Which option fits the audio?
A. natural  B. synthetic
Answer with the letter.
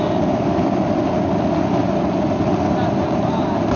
A